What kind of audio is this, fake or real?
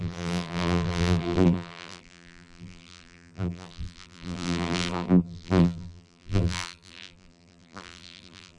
fake